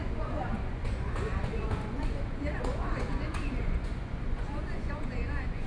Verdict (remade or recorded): remade